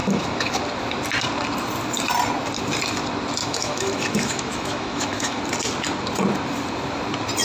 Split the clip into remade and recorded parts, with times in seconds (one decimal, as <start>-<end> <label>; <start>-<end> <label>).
0.0-0.6 remade; 0.6-3.4 recorded; 3.4-5.4 remade; 5.4-7.4 recorded